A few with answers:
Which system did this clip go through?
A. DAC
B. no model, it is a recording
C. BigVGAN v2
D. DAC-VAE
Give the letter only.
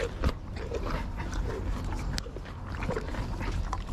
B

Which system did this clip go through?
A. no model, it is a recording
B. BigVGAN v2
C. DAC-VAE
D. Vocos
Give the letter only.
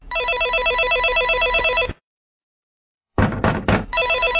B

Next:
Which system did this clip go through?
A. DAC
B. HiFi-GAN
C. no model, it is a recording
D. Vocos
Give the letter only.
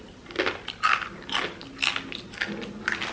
C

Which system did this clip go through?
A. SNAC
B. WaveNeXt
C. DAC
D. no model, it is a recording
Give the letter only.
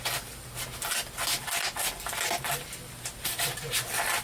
D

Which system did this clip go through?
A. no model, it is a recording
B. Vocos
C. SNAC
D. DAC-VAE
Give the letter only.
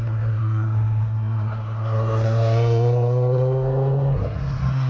C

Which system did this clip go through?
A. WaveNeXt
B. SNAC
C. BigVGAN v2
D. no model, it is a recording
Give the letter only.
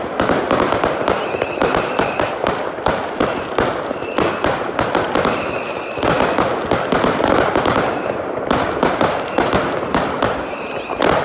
D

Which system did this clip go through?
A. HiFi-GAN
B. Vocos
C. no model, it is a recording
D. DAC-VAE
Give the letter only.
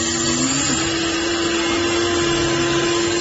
C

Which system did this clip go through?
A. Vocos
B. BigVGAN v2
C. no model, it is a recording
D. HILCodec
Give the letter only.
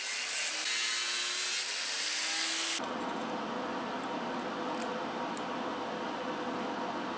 C